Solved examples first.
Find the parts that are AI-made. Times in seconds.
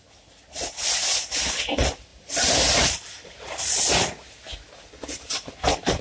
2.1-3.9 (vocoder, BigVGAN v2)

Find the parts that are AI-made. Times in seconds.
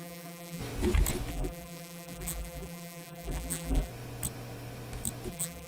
0.0-0.6 (vocoder, BigVGAN v2); 1.3-3.9; 5.3-5.7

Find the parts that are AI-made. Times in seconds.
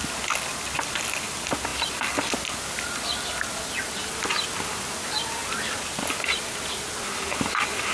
none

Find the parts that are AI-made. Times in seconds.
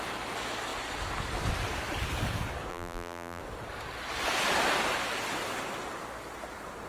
2.7-3.4 (vocoder, BigVGAN v2)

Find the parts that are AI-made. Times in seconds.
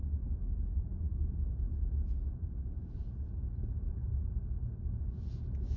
0.0-4.1 (vocoder, BigVGAN v2); 5.0-5.8